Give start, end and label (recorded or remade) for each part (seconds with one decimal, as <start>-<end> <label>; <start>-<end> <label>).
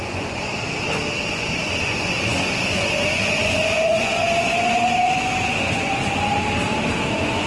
0.0-0.5 remade; 0.5-1.3 recorded; 1.3-6.3 remade; 6.3-7.1 recorded; 7.1-7.5 remade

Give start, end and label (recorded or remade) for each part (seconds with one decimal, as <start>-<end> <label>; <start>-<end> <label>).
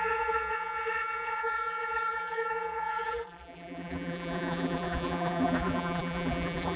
0.0-6.8 remade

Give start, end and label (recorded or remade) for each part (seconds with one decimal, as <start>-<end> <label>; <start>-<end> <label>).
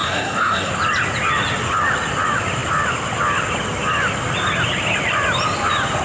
0.0-0.7 remade; 0.7-6.0 recorded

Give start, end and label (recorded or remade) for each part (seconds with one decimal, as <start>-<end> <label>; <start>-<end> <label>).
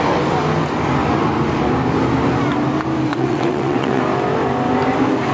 0.0-3.1 recorded; 3.1-4.0 remade; 4.0-5.3 recorded